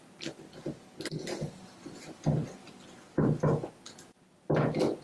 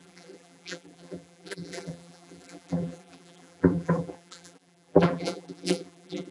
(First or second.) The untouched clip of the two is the first